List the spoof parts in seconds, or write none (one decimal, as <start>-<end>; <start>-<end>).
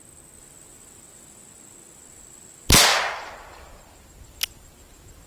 none